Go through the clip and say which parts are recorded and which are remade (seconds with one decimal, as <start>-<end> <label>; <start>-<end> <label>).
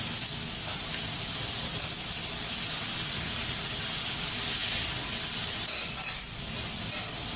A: 0.0-7.4 recorded